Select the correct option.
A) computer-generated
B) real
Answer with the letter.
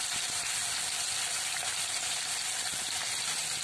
B